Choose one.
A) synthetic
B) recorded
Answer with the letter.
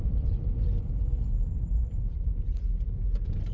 A